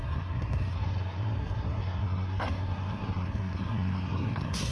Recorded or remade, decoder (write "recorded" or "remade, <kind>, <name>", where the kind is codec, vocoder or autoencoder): remade, codec, SNAC